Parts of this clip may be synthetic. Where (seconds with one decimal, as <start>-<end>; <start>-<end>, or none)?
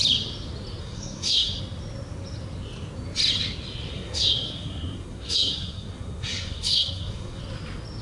0.8-1.6; 3.9-7.4